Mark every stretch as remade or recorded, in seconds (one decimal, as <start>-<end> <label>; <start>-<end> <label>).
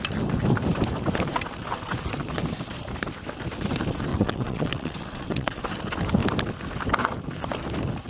0.0-4.1 recorded; 4.1-5.6 remade; 5.6-8.1 recorded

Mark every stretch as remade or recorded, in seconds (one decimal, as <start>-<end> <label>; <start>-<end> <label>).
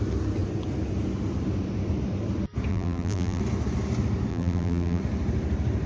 0.0-2.7 recorded; 2.7-3.4 remade; 3.4-4.3 recorded; 4.3-5.0 remade; 5.0-5.9 recorded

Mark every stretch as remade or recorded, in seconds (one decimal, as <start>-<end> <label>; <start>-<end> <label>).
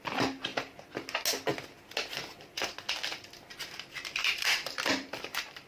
0.0-0.5 remade; 0.5-3.9 recorded; 3.9-5.7 remade